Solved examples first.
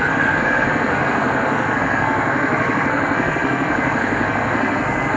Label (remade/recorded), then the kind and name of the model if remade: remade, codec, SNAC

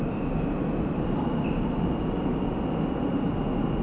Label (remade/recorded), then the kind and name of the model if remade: recorded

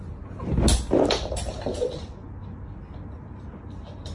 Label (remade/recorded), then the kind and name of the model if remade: recorded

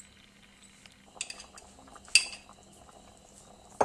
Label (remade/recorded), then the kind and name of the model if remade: recorded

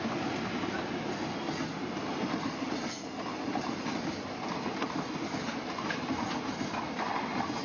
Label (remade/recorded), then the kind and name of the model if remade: recorded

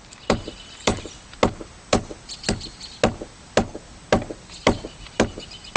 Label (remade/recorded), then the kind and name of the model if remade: recorded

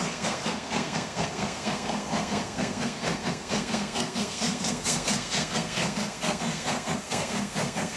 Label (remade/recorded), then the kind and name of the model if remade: remade, codec, SNAC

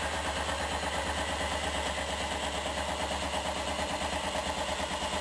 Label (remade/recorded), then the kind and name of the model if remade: recorded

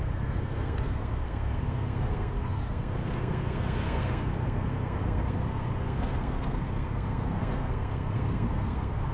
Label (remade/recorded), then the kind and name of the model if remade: remade, codec, SNAC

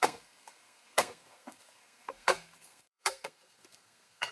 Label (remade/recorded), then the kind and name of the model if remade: remade, codec, SNAC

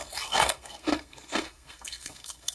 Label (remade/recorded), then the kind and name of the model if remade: remade, codec, SNAC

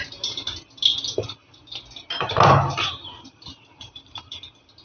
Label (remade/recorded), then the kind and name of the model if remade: recorded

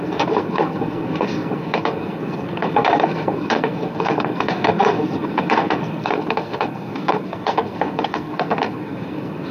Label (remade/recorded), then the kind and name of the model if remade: remade, codec, SNAC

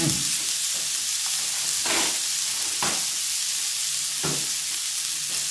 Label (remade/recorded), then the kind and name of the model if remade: recorded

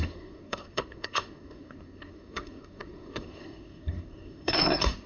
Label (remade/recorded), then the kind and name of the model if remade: remade, codec, SNAC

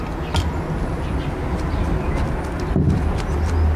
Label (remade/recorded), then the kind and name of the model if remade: recorded